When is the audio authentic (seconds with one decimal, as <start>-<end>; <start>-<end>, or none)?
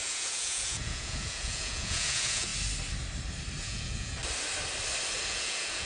2.5-3.6; 4.2-5.3